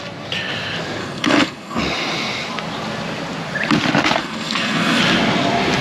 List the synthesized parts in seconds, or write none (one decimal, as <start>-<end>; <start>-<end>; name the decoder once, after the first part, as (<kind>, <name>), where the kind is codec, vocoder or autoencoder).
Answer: 1.0-1.8 (codec, SNAC); 4.2-5.0